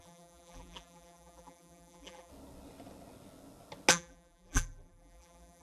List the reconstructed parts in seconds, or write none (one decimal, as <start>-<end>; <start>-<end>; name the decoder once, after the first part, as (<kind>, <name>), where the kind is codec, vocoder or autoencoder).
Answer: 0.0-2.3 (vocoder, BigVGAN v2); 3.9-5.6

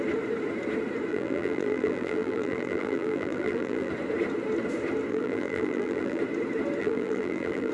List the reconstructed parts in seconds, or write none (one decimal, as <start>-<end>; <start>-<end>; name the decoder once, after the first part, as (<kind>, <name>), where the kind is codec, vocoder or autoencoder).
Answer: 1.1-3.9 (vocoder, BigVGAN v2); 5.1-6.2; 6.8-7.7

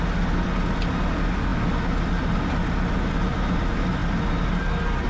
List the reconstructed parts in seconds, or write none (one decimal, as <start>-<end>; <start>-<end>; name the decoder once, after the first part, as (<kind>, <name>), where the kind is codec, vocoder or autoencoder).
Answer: none

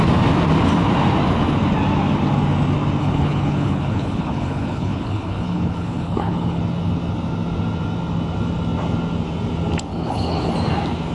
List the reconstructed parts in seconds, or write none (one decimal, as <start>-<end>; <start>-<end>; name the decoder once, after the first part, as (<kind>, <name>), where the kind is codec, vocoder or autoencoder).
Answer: 3.0-6.6 (codec, HILCodec); 9.9-10.5